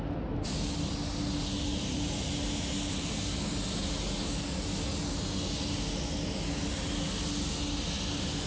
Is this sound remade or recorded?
recorded